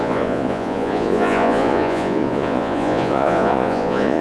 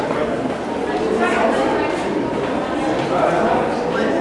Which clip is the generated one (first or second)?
first